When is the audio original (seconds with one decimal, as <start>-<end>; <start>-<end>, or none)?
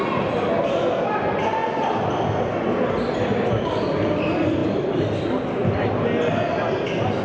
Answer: 0.0-7.2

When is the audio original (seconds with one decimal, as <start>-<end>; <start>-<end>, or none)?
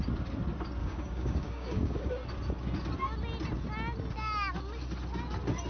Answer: 0.0-0.8; 2.1-5.7